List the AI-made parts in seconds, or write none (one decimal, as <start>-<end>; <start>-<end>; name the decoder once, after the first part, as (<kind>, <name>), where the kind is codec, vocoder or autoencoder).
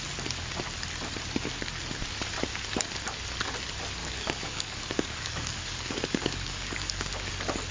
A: 4.0-7.3 (codec, DAC)